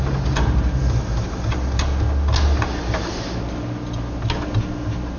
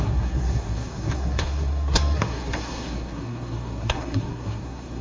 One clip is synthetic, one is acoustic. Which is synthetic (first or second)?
second